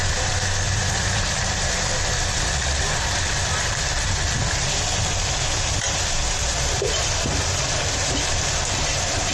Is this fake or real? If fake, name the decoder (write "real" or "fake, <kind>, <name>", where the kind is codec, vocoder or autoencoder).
fake, vocoder, BigVGAN v2